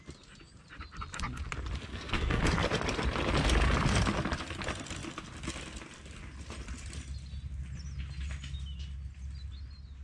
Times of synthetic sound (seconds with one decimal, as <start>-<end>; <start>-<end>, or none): 1.9-2.4